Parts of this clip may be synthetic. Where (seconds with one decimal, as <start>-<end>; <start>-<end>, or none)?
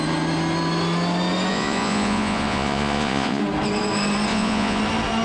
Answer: 1.5-3.4; 4.3-4.8